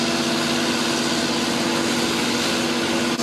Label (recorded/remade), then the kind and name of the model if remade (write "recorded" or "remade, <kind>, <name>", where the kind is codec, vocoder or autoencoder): recorded